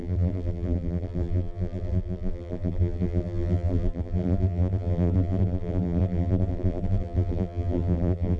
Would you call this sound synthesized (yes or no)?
yes